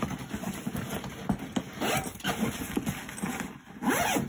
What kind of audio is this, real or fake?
real